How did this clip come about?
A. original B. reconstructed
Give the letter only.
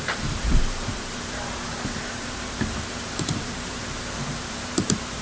B